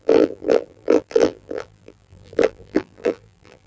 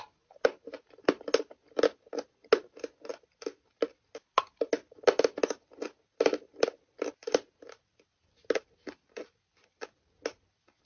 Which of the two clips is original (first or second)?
second